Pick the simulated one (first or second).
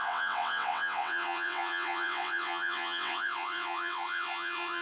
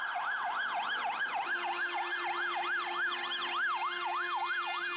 first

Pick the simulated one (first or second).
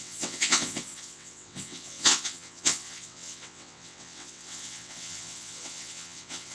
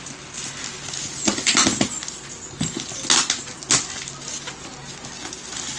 first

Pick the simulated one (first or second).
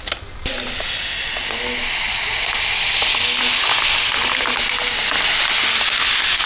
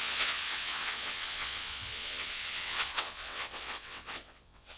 second